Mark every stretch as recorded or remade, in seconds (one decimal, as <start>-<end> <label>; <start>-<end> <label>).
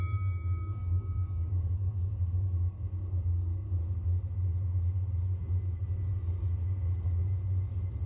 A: 0.0-3.8 remade; 3.8-8.1 recorded